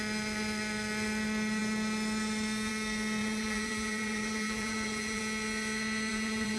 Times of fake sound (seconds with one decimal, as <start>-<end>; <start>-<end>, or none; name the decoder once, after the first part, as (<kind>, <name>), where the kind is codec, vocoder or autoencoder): 3.2-5.2 (vocoder, BigVGAN v2); 6.1-6.6